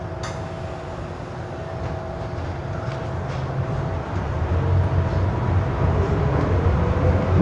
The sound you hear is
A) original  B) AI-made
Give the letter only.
A